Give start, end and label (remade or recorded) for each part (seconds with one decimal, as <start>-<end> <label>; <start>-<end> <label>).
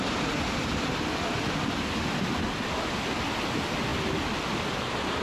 0.0-5.2 recorded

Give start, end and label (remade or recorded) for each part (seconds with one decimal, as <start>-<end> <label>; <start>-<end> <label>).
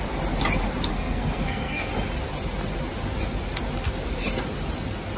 0.0-0.9 recorded; 0.9-1.9 remade; 1.9-5.2 recorded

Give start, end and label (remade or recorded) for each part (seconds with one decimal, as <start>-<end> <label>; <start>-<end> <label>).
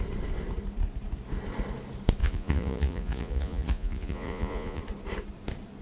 0.0-2.2 recorded; 2.2-4.8 remade; 4.8-5.8 recorded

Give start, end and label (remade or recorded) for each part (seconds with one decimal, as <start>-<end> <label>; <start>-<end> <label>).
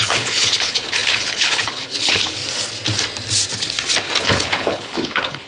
0.0-2.4 remade; 2.4-4.2 recorded; 4.2-5.5 remade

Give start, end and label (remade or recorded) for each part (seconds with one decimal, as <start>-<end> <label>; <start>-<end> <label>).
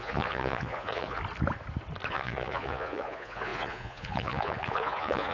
0.0-1.2 remade; 1.2-2.1 recorded; 2.1-5.3 remade